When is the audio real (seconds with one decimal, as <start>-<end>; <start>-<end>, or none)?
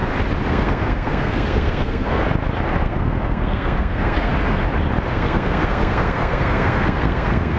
0.0-0.5; 2.2-2.8; 4.3-5.1